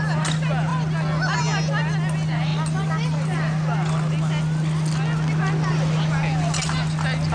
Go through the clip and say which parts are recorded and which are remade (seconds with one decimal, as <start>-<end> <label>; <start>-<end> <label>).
0.0-7.3 recorded